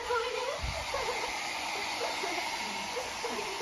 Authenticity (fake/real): fake